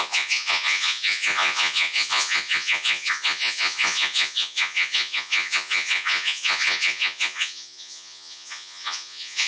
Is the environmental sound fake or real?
fake